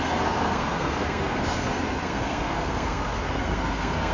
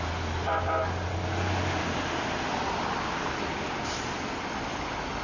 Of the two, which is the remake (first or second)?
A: first